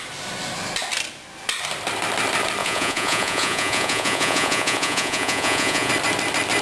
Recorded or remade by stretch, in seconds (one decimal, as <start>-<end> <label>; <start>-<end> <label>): 0.0-2.6 recorded; 2.6-5.9 remade; 5.9-6.6 recorded